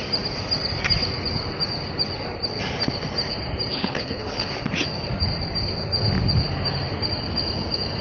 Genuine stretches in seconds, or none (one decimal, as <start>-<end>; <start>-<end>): 0.0-3.7; 4.5-8.0